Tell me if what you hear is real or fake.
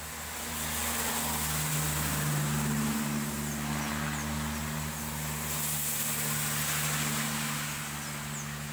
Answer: real